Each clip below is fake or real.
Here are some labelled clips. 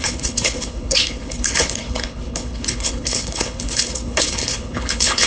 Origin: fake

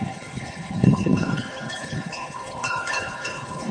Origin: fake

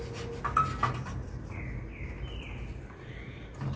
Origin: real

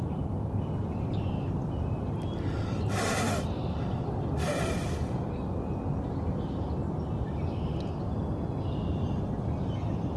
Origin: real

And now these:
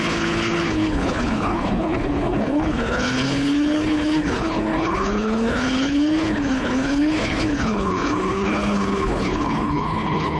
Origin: fake